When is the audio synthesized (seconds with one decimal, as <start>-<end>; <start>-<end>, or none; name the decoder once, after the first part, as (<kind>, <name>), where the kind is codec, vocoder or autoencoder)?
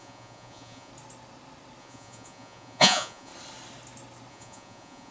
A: 0.0-0.9 (vocoder, Vocos); 1.8-3.3; 4.3-5.1